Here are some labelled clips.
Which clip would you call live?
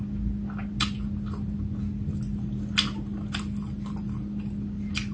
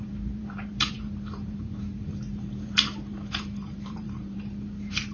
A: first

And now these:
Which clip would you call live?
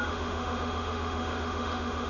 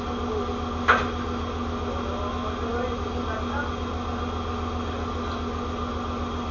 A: second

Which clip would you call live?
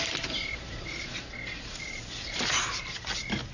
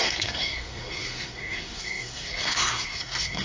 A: first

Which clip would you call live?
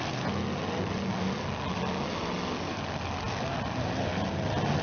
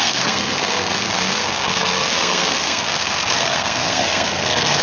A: first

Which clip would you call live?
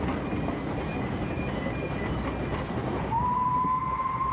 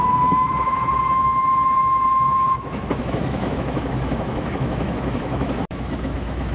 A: first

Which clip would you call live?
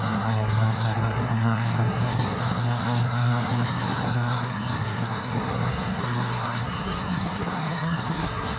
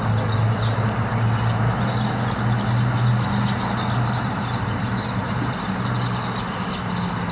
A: second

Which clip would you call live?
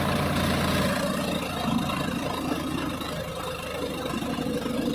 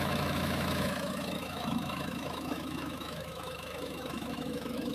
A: first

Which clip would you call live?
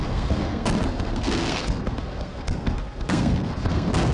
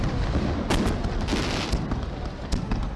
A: second